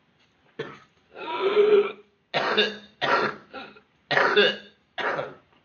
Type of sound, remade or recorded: recorded